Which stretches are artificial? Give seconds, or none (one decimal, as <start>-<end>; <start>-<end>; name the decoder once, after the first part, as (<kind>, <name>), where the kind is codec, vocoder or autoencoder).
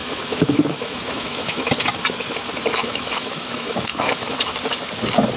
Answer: 0.0-1.7 (autoencoder, DAC-VAE); 2.8-4.3